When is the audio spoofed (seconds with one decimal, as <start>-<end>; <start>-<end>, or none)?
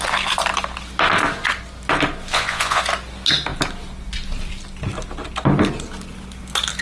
2.3-2.8